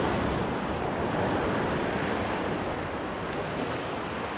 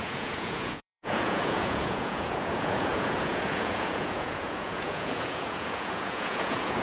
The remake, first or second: second